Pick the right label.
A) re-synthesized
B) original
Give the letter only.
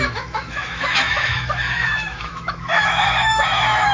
A